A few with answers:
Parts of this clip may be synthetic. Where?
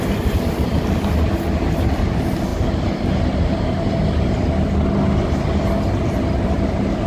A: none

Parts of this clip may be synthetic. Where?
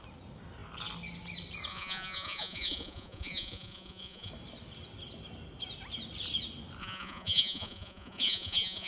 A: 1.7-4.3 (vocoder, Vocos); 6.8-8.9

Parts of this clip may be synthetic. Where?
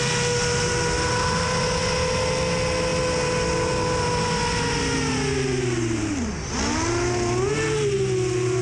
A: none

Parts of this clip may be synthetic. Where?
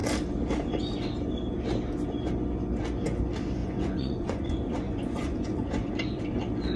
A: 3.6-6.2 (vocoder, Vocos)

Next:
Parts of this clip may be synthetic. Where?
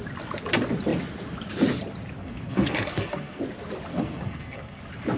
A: 2.2-3.4 (codec, SNAC); 3.9-4.8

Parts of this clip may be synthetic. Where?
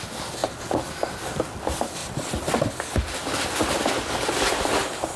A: none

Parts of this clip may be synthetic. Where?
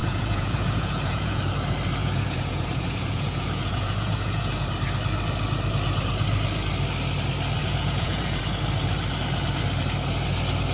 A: 0.0-1.4 (vocoder, Vocos); 2.0-4.7; 7.6-8.4